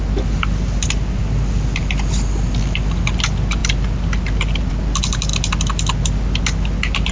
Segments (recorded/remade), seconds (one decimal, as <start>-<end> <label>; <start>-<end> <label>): 0.0-7.1 recorded